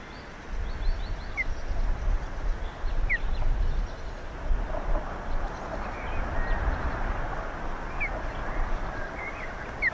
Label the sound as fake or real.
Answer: real